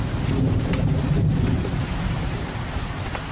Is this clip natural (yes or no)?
no